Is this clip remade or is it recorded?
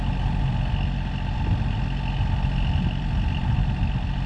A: recorded